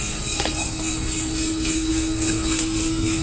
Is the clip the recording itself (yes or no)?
no